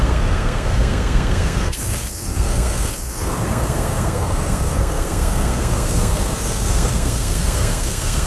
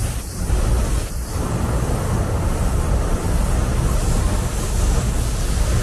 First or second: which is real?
second